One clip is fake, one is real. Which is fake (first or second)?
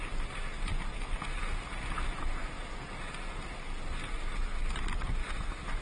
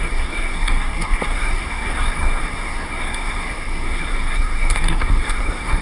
second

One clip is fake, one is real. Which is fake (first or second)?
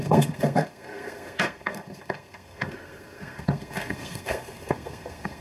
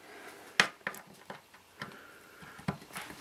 first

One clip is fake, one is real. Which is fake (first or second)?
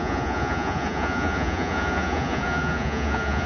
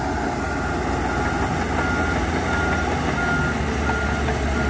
first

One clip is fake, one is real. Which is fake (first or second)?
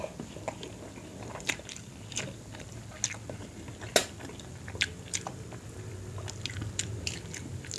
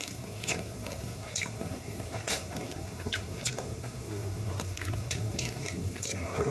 second